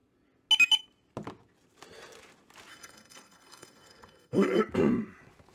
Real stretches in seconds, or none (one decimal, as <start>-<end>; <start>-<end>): 0.0-2.7; 4.6-5.5